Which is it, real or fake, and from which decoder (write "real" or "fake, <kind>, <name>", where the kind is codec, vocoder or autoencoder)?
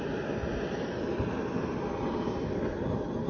real